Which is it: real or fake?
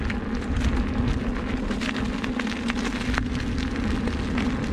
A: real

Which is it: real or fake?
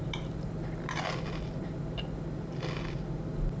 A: real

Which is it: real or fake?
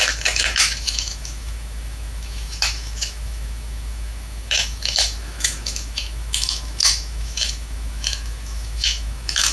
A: fake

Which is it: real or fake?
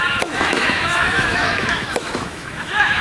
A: fake